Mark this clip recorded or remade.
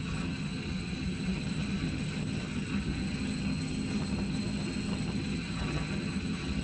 remade